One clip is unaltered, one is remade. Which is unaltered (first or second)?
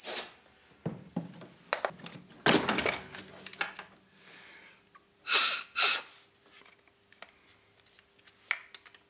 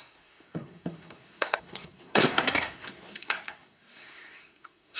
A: first